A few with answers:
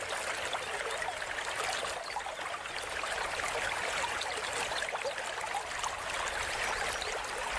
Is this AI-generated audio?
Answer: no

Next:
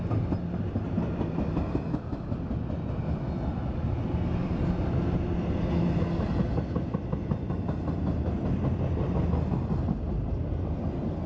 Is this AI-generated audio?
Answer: no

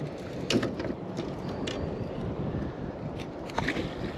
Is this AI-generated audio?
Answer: no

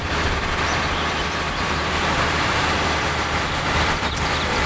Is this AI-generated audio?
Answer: yes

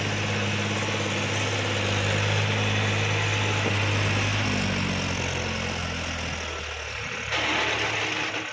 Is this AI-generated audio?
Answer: no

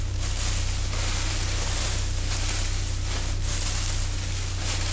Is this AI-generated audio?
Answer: no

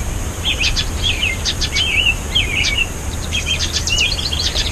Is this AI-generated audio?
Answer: yes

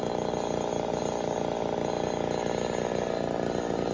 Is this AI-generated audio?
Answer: no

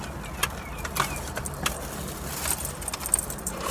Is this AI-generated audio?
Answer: no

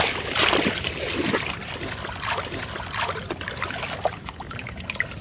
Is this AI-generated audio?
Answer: no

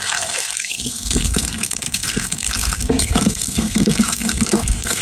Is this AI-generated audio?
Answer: yes